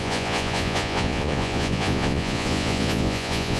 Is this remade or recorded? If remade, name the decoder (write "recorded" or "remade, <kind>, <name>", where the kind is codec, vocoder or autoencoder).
remade, vocoder, Vocos